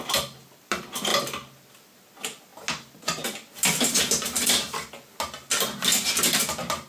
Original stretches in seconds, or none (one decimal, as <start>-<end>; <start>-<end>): 0.0-6.9